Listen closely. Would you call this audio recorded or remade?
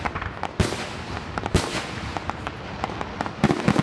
recorded